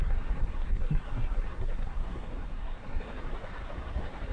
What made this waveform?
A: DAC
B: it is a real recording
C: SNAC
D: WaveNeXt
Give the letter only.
C